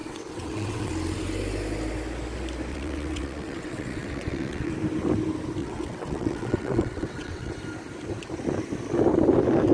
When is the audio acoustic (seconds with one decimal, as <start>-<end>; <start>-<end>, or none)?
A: 0.9-2.7; 4.7-5.6; 7.5-9.7